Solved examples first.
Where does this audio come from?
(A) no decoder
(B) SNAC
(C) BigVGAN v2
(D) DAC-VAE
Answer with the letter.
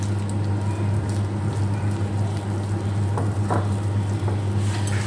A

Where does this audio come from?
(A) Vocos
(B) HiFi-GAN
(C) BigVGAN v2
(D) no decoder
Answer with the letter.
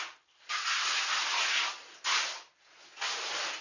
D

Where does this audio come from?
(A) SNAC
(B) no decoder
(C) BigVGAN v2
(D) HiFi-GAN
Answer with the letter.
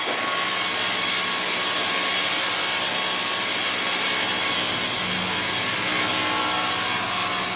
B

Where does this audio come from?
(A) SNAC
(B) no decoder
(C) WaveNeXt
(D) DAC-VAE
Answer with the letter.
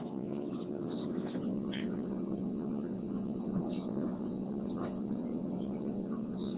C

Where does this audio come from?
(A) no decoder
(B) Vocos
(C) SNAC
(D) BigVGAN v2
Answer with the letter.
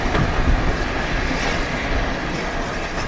A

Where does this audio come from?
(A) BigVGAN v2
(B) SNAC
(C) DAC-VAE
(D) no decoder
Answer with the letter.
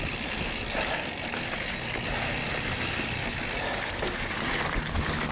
D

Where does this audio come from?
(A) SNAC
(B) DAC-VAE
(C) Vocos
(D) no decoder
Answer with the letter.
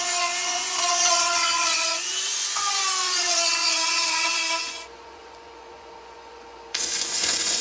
C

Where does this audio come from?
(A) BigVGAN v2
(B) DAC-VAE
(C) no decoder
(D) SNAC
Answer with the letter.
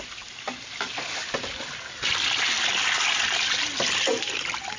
C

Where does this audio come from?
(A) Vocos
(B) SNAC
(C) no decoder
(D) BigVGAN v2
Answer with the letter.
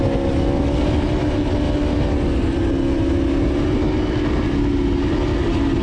C